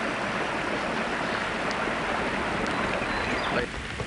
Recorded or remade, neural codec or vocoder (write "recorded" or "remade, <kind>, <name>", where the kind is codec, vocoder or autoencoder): recorded